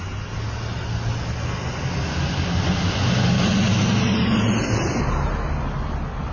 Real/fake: real